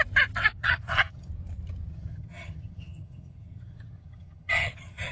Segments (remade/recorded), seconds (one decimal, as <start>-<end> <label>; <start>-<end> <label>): 0.0-0.6 recorded; 0.6-1.3 remade; 1.3-1.9 recorded; 1.9-5.1 remade